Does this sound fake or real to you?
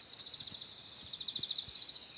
real